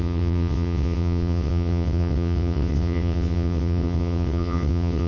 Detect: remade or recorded remade